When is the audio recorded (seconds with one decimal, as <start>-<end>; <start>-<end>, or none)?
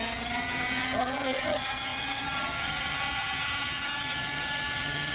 none